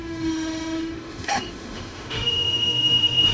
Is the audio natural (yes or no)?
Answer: no